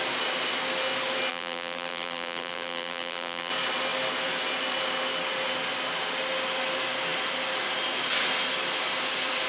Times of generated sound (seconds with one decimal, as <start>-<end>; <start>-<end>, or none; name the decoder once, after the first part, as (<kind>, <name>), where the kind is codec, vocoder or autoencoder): 1.3-3.5 (vocoder, BigVGAN v2)